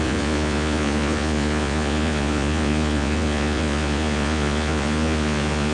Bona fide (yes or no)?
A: no